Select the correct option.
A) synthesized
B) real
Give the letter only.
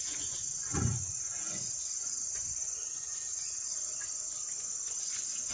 A